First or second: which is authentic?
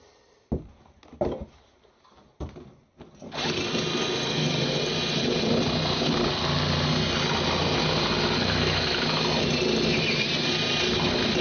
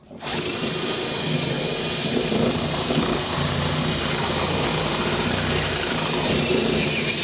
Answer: first